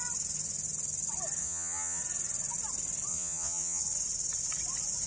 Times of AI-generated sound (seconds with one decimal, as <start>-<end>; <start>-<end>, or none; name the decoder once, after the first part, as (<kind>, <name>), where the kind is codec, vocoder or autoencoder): 1.4-2.0 (vocoder, Vocos); 3.1-3.8